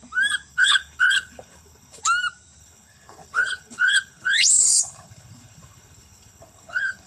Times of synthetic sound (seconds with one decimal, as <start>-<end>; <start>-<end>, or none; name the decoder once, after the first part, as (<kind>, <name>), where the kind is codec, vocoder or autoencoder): 0.5-2.0 (codec, HILCodec); 2.6-7.1